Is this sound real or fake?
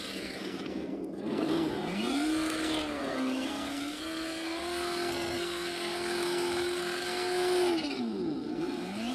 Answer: fake